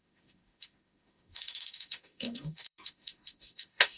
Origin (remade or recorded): remade